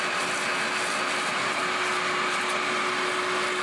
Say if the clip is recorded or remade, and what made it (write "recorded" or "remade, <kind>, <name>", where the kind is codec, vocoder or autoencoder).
recorded